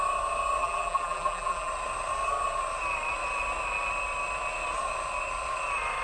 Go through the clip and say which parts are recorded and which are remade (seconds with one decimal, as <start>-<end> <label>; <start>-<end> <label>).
0.0-0.6 recorded; 0.6-1.7 remade; 1.7-6.0 recorded